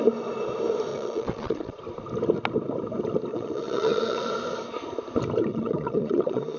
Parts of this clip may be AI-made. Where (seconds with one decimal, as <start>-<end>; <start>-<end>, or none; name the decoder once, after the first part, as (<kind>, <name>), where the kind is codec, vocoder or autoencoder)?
0.9-1.8 (vocoder, Vocos); 3.3-4.3; 5.5-6.6